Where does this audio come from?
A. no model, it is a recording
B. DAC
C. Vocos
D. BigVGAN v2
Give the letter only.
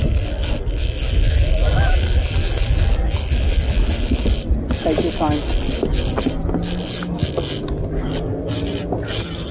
A